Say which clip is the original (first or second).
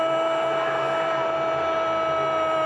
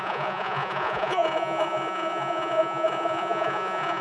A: first